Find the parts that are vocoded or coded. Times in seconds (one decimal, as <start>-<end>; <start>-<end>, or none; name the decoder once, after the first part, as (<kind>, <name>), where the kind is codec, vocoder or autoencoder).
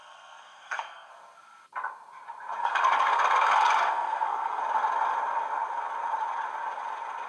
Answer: 0.0-1.1 (codec, SNAC); 2.6-4.6